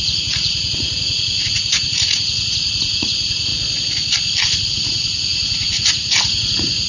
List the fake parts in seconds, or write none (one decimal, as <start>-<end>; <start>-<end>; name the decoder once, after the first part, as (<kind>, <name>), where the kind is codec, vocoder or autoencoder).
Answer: 0.0-3.5 (vocoder, Vocos); 4.7-6.9